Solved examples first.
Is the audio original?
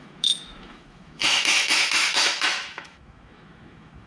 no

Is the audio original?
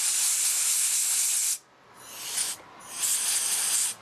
yes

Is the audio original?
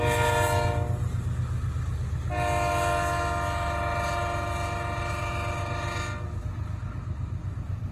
yes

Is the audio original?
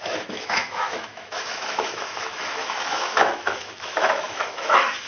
no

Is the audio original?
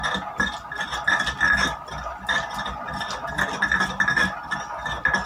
yes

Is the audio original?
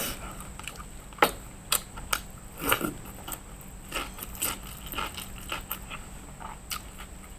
yes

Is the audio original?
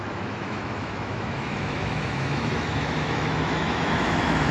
no